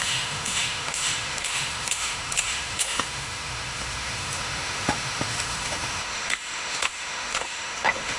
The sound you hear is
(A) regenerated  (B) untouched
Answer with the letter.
A